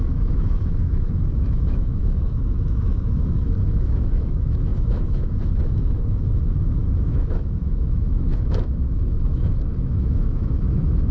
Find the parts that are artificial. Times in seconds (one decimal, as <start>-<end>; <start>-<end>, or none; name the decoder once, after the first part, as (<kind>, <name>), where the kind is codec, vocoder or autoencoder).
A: 0.0-11.1 (autoencoder, DAC-VAE)

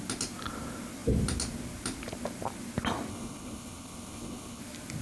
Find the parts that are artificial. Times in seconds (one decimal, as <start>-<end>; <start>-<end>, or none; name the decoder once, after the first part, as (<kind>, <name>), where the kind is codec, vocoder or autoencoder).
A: 3.1-4.6 (codec, HILCodec)

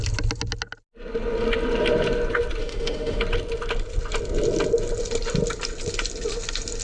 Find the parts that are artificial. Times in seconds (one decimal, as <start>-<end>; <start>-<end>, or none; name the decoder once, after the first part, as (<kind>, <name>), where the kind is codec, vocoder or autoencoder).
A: 2.6-3.2 (autoencoder, DAC-VAE)

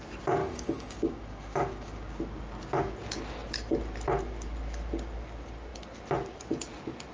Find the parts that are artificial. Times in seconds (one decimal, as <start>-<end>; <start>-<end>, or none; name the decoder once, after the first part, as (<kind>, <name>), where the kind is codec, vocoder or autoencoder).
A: 0.4-2.2 (codec, DAC)

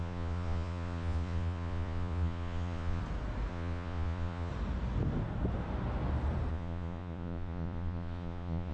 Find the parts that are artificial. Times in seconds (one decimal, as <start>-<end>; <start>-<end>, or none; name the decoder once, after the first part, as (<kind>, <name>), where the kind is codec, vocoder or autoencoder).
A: 0.0-3.0 (vocoder, Vocos); 3.5-4.5; 6.5-8.7